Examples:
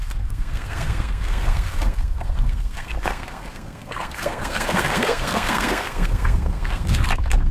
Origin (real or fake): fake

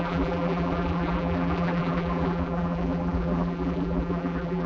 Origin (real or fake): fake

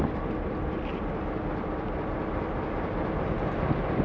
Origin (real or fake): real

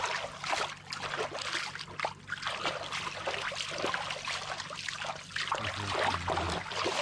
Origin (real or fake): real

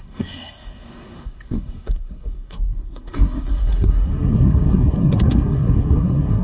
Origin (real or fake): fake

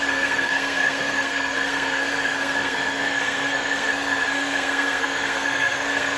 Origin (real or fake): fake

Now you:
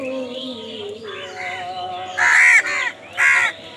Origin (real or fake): fake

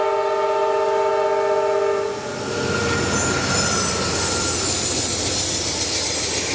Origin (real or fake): real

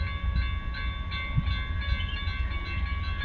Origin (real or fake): real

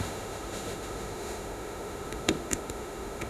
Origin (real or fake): fake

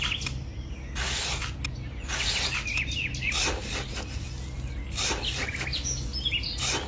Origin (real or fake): real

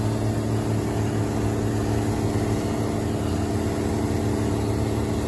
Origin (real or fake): real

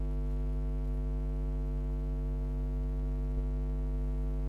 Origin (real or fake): real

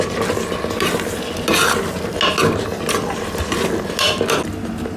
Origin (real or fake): real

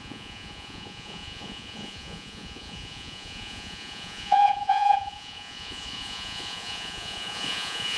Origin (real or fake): fake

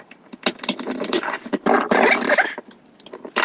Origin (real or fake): real